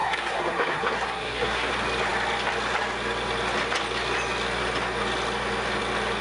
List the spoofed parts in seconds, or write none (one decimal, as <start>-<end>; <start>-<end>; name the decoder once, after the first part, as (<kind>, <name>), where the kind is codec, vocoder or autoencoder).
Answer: 0.0-1.7 (codec, SNAC)